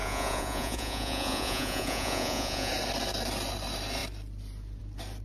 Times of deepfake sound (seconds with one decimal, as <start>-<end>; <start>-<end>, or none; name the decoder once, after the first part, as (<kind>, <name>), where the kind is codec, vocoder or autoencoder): 0.0-2.7 (vocoder, Vocos)